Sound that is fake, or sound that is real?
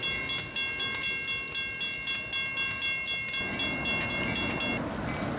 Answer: real